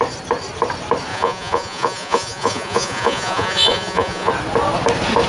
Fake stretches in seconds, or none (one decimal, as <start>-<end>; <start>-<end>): 1.1-4.3